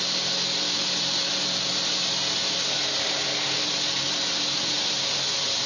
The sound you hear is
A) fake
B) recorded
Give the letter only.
B